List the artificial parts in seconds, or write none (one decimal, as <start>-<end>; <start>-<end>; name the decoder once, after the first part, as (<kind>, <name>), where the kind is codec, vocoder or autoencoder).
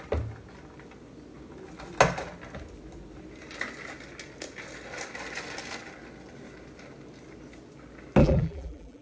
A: 8.2-9.0 (vocoder, BigVGAN v2)